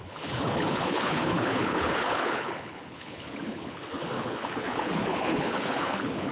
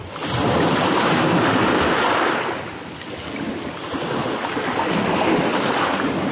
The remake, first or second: first